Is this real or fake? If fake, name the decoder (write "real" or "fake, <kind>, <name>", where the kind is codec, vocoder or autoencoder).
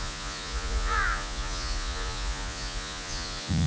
fake, vocoder, Vocos